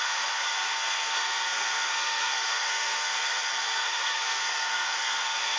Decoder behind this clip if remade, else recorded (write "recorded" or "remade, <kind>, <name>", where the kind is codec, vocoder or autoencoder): remade, codec, SNAC